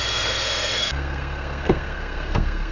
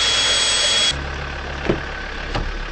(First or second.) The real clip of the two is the second